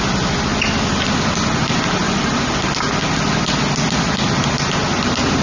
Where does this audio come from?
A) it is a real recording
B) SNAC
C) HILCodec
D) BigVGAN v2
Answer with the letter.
A